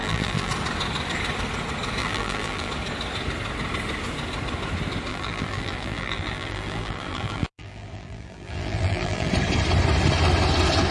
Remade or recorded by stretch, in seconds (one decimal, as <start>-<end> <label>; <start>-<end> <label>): 0.0-0.5 remade; 0.5-2.0 recorded; 2.0-2.7 remade; 2.7-5.1 recorded; 5.1-9.3 remade; 9.3-10.9 recorded